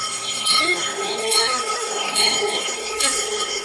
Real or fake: fake